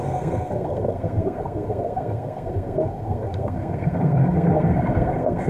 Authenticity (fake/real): fake